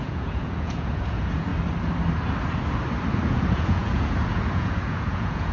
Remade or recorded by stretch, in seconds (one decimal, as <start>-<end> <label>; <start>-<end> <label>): 0.0-1.5 remade; 1.5-3.1 recorded; 3.1-5.5 remade